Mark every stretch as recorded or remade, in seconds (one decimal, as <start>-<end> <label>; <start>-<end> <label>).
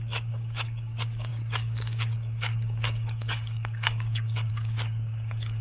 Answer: 0.0-5.6 remade